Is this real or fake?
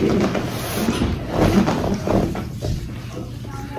real